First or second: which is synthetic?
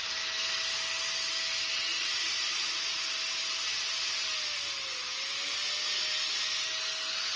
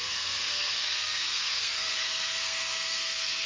second